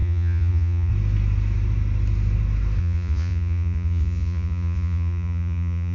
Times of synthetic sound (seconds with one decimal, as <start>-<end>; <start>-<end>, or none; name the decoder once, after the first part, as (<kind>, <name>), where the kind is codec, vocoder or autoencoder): 0.0-0.9 (vocoder, Vocos); 2.8-5.9